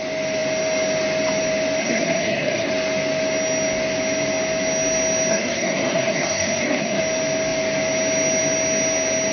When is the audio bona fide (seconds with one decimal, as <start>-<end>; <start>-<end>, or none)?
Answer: 0.0-1.8; 2.7-5.3; 7.0-9.3

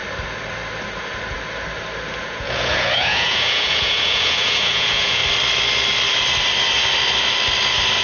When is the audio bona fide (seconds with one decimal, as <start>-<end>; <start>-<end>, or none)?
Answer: 0.0-2.2; 5.2-8.0